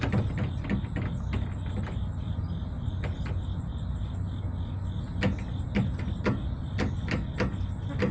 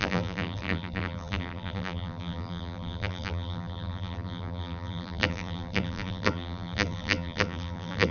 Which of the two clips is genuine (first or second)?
first